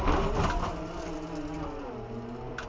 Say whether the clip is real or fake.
real